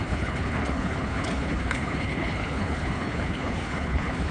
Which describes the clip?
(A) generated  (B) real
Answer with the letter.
A